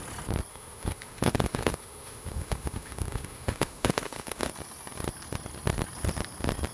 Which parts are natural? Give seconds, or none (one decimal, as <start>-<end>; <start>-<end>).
0.0-0.5; 4.5-6.7